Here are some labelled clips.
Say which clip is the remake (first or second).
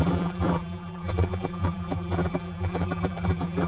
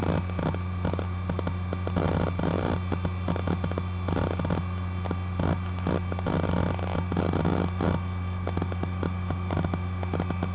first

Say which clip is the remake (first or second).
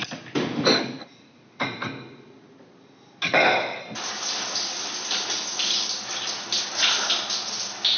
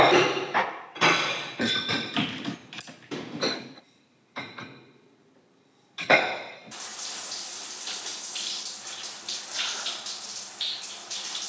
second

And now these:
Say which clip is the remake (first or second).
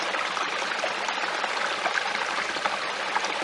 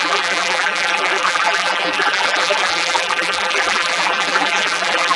second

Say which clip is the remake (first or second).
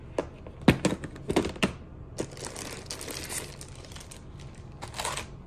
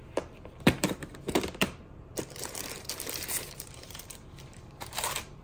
second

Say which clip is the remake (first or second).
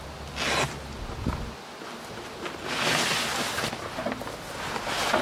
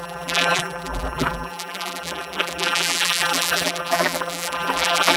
second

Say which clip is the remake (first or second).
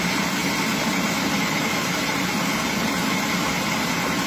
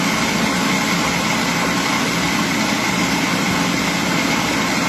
first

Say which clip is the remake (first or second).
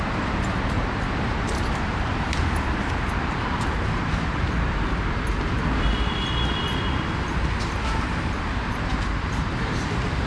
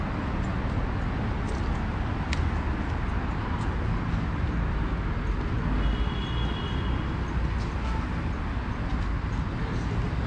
first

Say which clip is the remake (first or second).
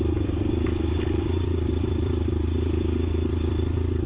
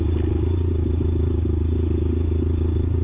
first